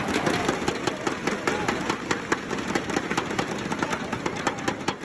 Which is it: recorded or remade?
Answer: recorded